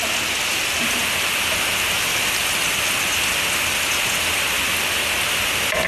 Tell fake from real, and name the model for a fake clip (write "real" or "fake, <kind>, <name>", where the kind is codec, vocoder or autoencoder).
real